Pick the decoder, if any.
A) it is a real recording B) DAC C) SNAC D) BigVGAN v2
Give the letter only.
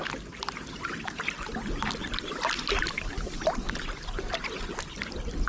A